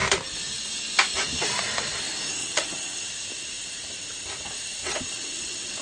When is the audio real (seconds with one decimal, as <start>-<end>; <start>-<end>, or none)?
0.0-2.4; 3.0-4.8